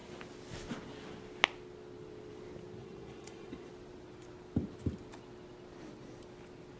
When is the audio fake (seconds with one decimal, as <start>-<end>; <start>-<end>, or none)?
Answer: 2.8-3.7